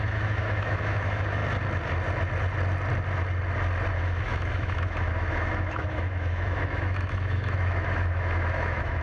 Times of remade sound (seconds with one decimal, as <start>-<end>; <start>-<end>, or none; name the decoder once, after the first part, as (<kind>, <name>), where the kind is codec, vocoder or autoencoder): 0.0-1.4 (autoencoder, DAC-VAE); 3.9-9.0